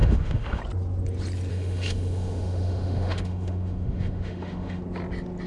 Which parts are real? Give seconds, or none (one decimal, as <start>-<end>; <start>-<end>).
0.6-1.5; 4.8-5.5